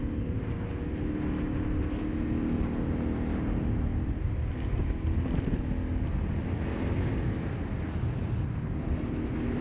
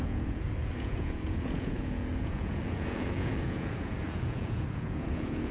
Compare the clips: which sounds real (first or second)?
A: first